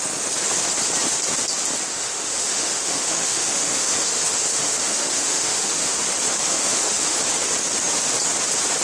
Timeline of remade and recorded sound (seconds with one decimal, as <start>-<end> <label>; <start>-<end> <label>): 0.0-1.9 recorded; 1.9-6.0 remade; 6.0-6.5 recorded; 6.5-7.2 remade; 7.2-8.8 recorded